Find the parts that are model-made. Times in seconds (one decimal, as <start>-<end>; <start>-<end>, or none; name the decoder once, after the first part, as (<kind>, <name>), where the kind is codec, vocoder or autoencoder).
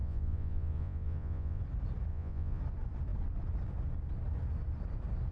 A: 0.0-1.6 (vocoder, Vocos); 2.1-2.6